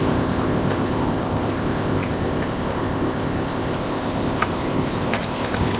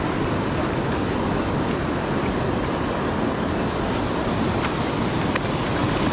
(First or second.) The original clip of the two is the second